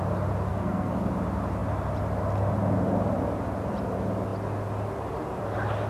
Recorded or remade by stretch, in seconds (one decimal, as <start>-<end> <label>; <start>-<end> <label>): 0.0-0.5 recorded; 0.5-1.1 remade; 1.1-5.9 recorded